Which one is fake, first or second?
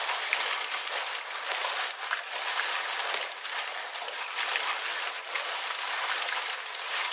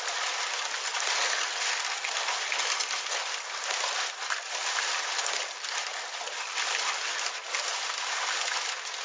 first